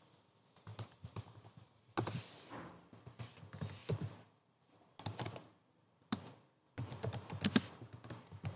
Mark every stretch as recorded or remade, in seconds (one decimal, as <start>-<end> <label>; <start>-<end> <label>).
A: 0.0-0.7 recorded; 0.7-1.2 remade; 1.2-8.6 recorded